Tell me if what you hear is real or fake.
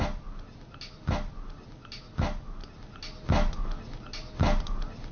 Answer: real